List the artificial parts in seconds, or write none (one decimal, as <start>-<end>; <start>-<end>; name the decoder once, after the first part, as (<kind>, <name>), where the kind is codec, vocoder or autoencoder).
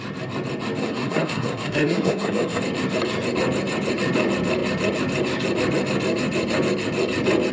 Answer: 0.8-2.6 (codec, SNAC)